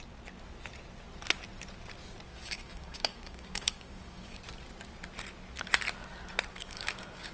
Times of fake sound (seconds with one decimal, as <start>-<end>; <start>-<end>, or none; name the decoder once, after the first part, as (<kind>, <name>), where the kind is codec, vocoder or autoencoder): 2.3-4.4 (codec, DAC); 6.5-7.3